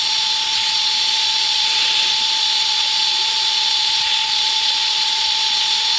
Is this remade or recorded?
remade